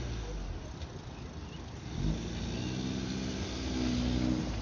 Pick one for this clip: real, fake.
real